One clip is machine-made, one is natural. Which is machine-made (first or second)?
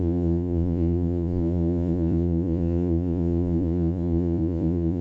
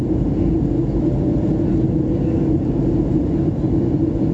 first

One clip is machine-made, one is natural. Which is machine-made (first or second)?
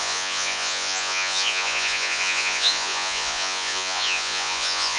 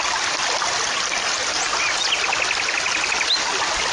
first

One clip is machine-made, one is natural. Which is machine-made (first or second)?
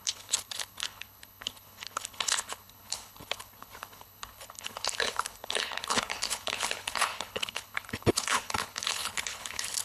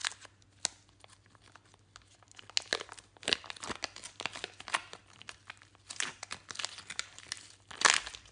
first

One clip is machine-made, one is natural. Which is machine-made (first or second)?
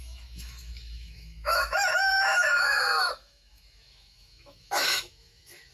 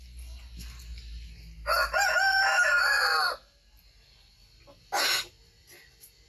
first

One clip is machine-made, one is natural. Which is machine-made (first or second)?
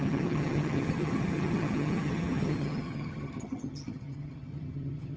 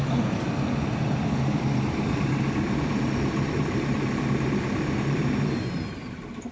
first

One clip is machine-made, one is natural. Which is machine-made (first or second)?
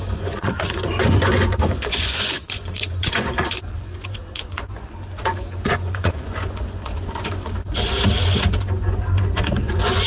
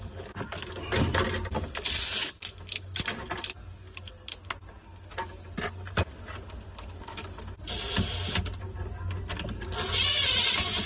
first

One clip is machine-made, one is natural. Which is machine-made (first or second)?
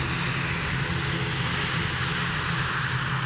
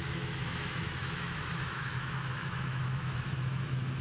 second